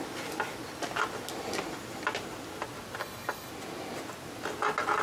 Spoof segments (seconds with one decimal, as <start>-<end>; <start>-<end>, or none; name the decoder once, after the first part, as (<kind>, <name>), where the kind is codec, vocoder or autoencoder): 3.0-3.5 (codec, DAC)